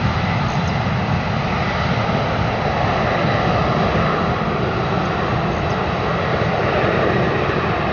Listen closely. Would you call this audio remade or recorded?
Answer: recorded